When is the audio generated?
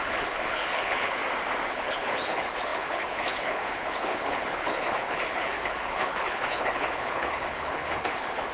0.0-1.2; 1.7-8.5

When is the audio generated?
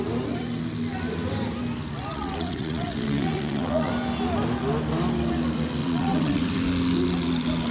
2.1-3.9; 5.8-6.4